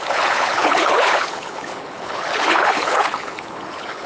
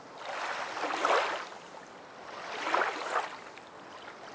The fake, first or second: first